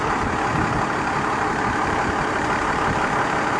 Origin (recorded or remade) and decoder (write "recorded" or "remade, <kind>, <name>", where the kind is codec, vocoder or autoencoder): recorded